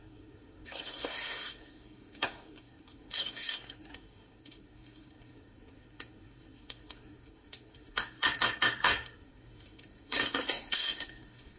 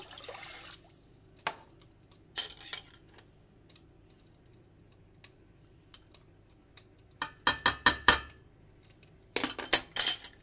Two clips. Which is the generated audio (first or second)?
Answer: first